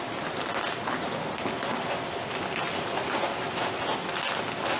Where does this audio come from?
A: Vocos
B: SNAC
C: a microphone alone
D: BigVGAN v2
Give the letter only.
C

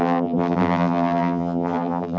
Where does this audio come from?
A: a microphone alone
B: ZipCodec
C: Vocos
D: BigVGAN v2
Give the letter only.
D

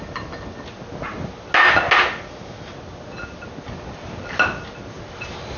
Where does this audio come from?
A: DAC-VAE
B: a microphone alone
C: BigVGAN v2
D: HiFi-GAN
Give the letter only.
B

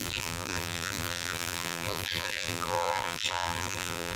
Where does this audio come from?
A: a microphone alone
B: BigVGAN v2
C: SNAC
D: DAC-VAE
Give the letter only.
B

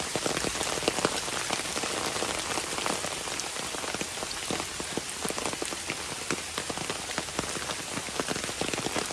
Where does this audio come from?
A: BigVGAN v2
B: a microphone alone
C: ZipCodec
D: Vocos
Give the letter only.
B